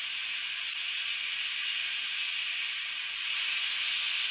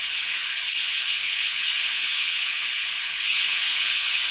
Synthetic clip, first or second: second